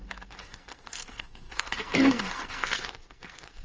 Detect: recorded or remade remade